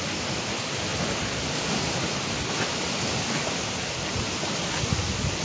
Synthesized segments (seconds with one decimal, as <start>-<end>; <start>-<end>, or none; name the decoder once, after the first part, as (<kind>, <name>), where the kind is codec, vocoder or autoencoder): 0.9-1.9 (vocoder, BigVGAN v2)